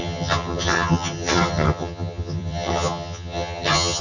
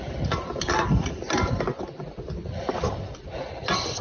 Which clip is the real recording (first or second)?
second